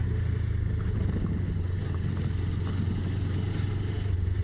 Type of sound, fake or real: real